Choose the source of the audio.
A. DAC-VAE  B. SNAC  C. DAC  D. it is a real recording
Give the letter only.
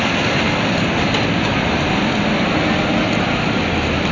D